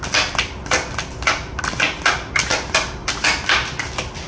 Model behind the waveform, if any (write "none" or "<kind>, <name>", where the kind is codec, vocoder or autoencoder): none